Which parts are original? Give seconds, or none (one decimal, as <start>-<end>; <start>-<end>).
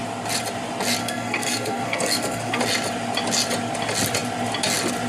0.0-1.0; 2.6-5.1